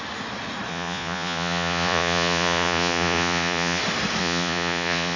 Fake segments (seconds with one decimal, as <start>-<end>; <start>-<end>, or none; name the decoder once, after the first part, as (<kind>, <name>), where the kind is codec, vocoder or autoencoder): 0.7-3.8 (vocoder, Vocos); 4.2-5.2